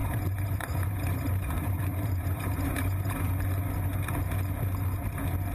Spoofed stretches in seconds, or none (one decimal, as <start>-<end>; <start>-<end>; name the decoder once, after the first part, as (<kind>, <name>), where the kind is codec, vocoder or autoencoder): 0.0-3.3 (vocoder, BigVGAN v2)

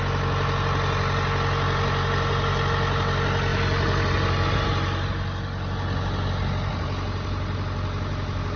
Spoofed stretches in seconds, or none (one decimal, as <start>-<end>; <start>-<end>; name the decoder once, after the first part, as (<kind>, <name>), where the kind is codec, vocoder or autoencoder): none

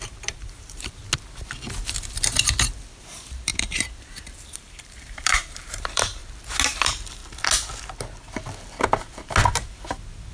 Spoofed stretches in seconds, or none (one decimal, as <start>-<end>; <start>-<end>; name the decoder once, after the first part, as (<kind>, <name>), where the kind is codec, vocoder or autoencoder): 0.0-1.0 (vocoder, BigVGAN v2); 3.0-6.2; 6.8-7.2

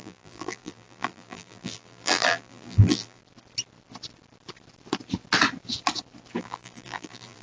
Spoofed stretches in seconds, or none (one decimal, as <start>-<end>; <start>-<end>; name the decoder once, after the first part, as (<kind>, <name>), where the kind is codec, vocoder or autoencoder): 0.0-3.2 (vocoder, BigVGAN v2); 6.4-7.4

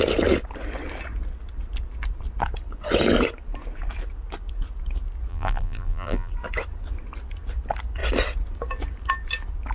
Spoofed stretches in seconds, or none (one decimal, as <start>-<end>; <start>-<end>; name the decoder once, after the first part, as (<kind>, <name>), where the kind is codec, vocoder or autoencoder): 5.3-6.3 (vocoder, BigVGAN v2)

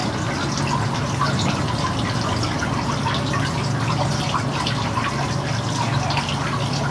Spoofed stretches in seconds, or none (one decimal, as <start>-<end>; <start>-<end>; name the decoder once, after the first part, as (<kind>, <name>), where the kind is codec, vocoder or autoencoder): none

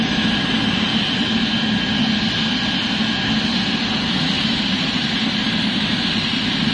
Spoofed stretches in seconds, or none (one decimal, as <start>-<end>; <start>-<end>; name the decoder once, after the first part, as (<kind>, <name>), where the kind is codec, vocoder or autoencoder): 0.0-0.9 (vocoder, BigVGAN v2); 4.4-6.7